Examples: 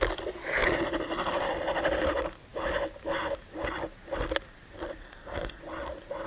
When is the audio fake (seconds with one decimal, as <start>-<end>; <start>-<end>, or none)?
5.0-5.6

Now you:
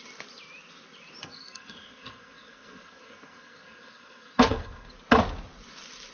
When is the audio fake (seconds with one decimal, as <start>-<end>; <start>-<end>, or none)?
1.2-4.9

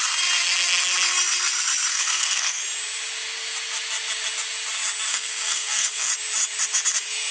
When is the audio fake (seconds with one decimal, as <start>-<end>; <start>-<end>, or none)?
1.9-2.6; 5.1-6.1

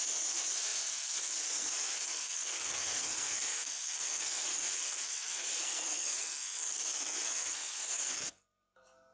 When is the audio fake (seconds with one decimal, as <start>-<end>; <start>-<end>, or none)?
0.0-9.1

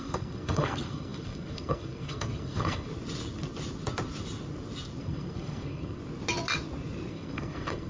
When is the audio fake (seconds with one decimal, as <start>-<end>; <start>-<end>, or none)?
0.0-2.9; 5.0-6.0; 7.1-7.9

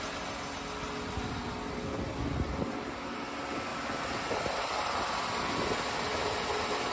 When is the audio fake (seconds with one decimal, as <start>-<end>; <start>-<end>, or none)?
none

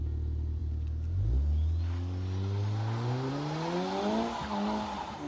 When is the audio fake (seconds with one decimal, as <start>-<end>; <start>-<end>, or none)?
none